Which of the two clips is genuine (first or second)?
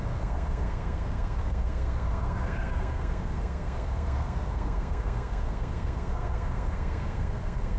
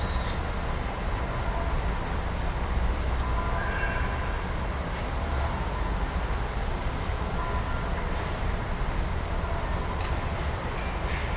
second